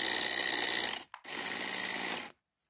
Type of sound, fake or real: real